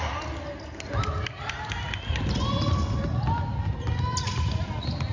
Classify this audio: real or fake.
real